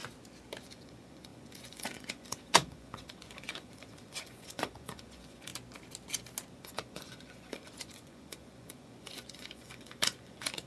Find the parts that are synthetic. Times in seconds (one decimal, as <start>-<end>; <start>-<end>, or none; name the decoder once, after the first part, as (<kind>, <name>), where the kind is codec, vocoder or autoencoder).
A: 0.6-5.5 (vocoder, Vocos); 6.5-10.7